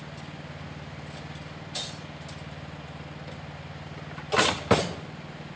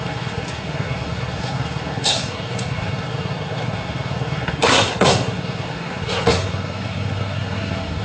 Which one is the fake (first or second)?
second